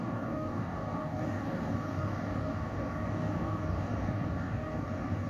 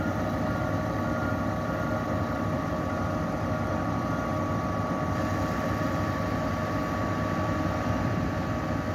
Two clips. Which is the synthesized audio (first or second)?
first